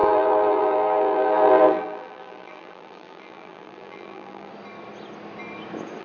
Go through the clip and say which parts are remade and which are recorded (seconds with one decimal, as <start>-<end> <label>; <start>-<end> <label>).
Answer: 0.0-4.5 remade; 4.5-6.0 recorded